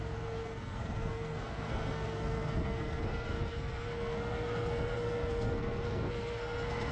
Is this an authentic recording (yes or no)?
no